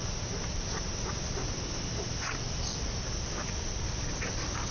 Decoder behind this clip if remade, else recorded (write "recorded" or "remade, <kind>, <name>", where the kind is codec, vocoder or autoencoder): recorded